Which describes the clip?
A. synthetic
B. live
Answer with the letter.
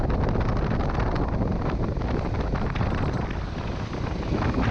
B